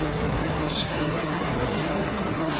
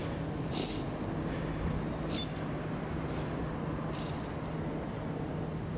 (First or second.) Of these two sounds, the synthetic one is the first